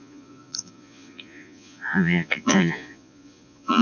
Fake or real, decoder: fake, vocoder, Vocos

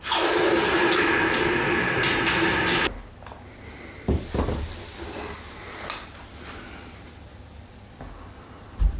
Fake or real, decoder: real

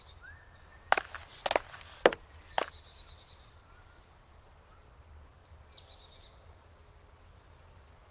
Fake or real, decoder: real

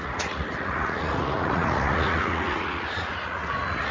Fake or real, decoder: fake, vocoder, Vocos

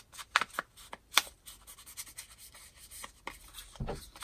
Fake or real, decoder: real